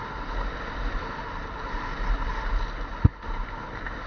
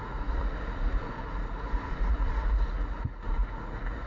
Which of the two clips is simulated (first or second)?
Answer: second